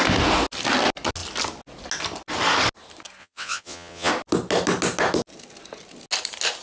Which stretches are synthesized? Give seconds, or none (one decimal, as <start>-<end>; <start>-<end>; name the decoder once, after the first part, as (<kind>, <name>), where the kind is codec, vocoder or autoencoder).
3.2-4.1 (vocoder, WaveNeXt)